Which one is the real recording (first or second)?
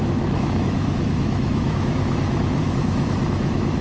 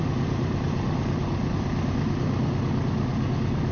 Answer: second